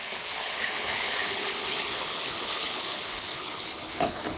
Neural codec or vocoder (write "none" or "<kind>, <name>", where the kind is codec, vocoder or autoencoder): codec, HILCodec